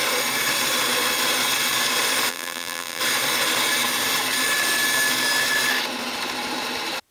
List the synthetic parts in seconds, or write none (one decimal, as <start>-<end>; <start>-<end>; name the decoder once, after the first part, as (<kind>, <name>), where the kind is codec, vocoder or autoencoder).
2.3-3.0 (vocoder, BigVGAN v2)